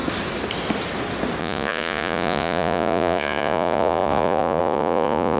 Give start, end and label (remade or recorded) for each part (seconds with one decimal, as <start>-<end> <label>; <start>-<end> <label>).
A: 0.0-1.4 recorded; 1.4-5.4 remade